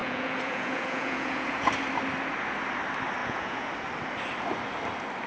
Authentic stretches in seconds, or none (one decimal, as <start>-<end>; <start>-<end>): 1.7-3.2; 3.7-5.3